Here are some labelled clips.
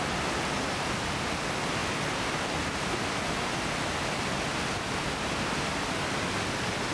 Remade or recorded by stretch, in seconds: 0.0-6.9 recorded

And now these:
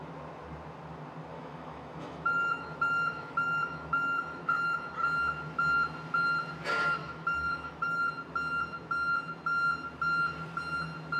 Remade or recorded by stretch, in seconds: 0.0-1.3 recorded; 1.3-4.9 remade; 4.9-7.0 recorded; 7.0-8.1 remade; 8.1-11.2 recorded

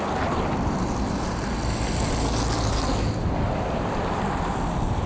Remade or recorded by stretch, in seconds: 0.0-5.1 recorded